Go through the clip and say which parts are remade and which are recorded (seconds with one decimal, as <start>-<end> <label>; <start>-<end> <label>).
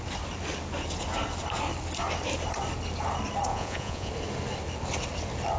0.0-3.5 recorded; 3.5-4.1 remade; 4.1-5.6 recorded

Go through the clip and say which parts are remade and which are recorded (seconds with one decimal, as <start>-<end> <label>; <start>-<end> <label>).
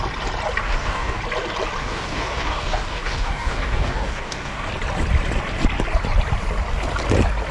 0.0-0.6 recorded; 0.6-1.2 remade; 1.2-1.8 recorded; 1.8-4.7 remade; 4.7-7.5 recorded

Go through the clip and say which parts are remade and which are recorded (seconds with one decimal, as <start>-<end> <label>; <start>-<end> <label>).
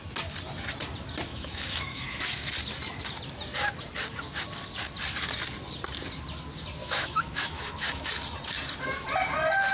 0.0-1.3 recorded; 1.3-2.2 remade; 2.2-6.8 recorded; 6.8-8.1 remade; 8.1-9.7 recorded